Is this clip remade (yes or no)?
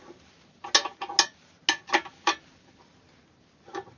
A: no